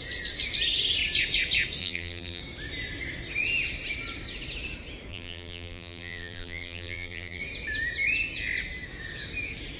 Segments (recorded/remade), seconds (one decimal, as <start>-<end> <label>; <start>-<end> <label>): 0.0-1.8 recorded; 1.8-2.4 remade; 2.4-5.1 recorded; 5.1-7.4 remade; 7.4-9.8 recorded